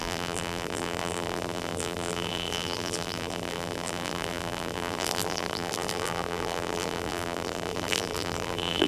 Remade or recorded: remade